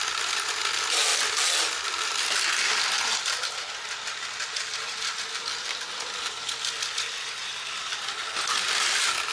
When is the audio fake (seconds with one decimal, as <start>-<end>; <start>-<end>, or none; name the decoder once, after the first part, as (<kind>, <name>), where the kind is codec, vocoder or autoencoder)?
none